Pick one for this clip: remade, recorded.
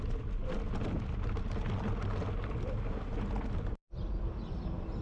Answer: recorded